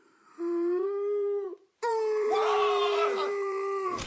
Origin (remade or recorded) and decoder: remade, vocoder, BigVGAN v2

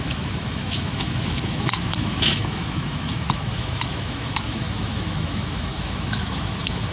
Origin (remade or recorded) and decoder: remade, autoencoder, DAC-VAE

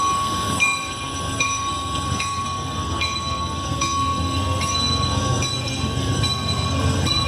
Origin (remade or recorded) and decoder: remade, codec, SNAC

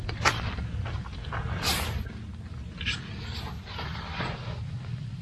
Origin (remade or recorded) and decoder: recorded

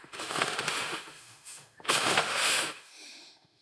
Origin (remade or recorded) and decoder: remade, autoencoder, DAC-VAE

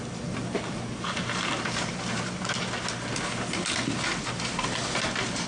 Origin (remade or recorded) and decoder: recorded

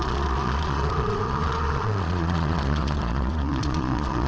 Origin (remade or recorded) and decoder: remade, vocoder, Vocos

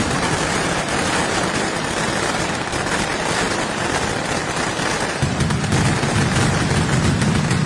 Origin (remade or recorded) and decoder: remade, vocoder, BigVGAN v2